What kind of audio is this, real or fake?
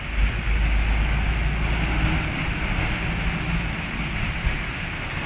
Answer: real